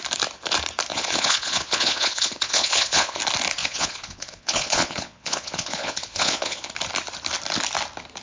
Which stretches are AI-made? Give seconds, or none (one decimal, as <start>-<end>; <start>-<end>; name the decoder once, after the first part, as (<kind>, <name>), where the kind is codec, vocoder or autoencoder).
0.9-3.2 (vocoder, Vocos); 3.6-6.7